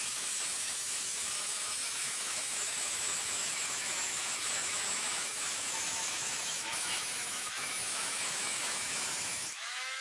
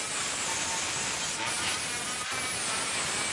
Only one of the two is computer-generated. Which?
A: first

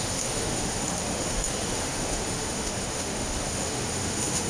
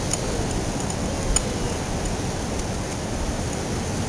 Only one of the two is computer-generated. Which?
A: first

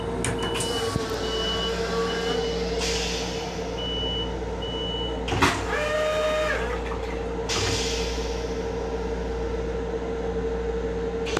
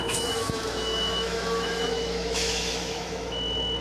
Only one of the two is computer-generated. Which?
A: second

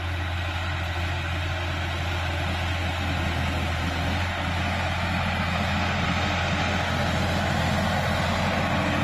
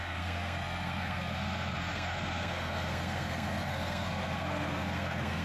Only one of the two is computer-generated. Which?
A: second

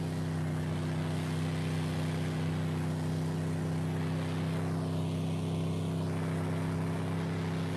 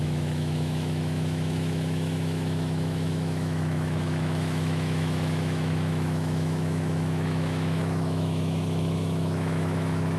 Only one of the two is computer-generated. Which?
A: second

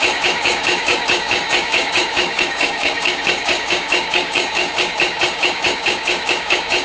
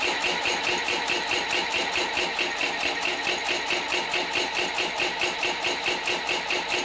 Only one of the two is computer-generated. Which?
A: first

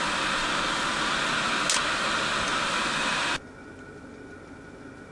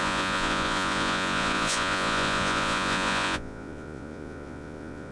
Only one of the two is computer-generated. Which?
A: second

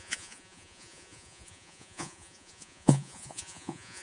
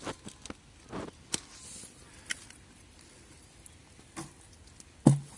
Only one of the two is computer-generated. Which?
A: first